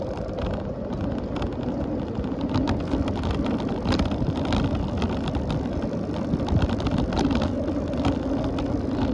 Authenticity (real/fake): real